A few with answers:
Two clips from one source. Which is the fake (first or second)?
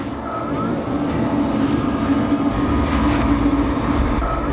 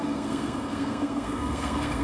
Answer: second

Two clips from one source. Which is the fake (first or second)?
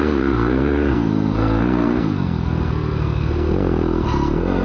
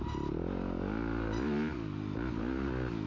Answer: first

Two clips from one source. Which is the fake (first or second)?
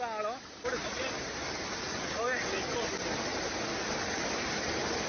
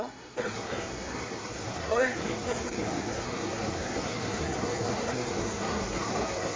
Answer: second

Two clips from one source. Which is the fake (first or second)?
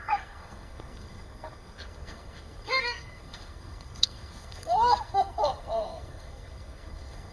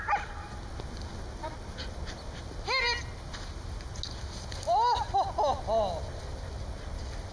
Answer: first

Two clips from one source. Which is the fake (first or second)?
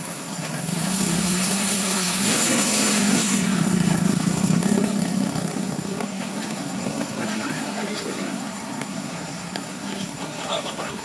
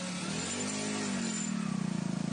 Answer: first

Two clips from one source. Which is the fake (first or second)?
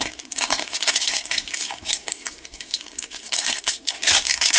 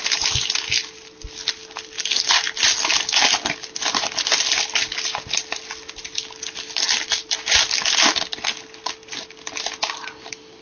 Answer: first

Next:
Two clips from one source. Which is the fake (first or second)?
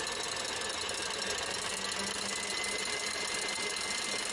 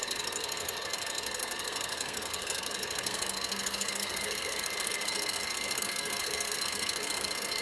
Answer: second